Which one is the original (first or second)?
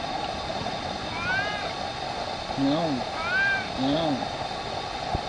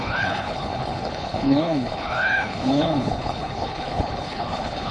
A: first